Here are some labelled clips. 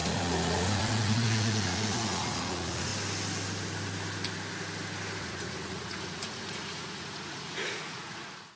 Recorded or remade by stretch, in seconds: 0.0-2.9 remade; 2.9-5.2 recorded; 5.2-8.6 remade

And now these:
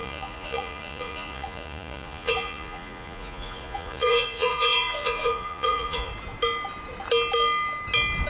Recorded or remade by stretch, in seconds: 0.0-6.1 remade; 6.1-8.3 recorded

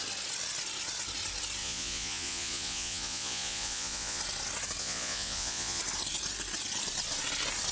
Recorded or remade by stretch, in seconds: 0.0-1.6 recorded; 1.6-4.2 remade; 4.2-4.8 recorded; 4.8-5.8 remade; 5.8-7.7 recorded

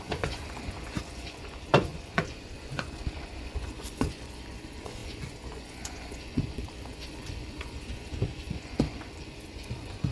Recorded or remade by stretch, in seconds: 0.0-10.1 remade

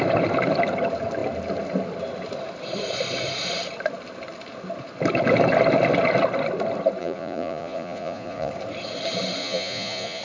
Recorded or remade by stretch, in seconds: 0.0-7.0 recorded; 7.0-8.5 remade; 8.5-9.4 recorded; 9.4-10.2 remade

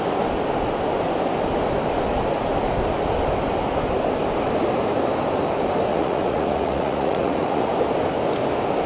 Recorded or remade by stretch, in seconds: 0.0-5.9 recorded; 5.9-7.7 remade; 7.7-8.9 recorded

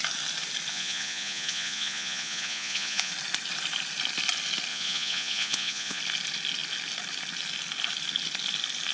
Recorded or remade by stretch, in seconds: 0.0-0.7 recorded; 0.7-3.1 remade; 3.1-4.7 recorded; 4.7-6.0 remade; 6.0-8.9 recorded

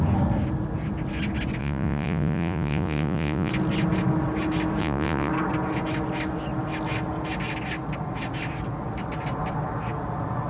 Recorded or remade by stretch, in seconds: 0.0-1.6 recorded; 1.6-3.5 remade; 3.5-4.8 recorded; 4.8-5.3 remade; 5.3-10.5 recorded